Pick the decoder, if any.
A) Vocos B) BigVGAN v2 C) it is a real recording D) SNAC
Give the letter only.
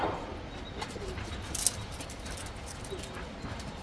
C